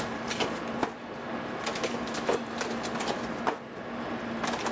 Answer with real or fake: real